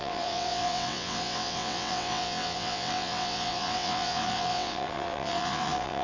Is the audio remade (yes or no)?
yes